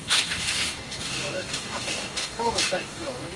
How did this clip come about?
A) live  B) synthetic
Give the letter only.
B